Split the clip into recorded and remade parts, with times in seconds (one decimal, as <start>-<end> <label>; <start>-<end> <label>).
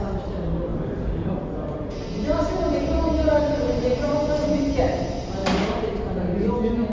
0.0-6.9 recorded